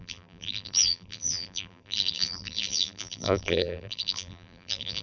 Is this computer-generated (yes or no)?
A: yes